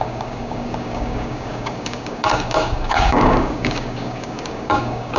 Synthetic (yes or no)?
yes